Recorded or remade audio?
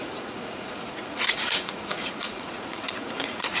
remade